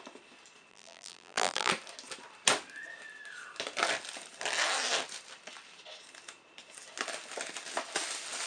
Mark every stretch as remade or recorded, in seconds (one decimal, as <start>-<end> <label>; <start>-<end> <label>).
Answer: 0.0-0.7 recorded; 0.7-1.7 remade; 1.7-8.5 recorded